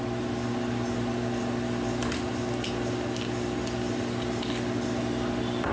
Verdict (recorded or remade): recorded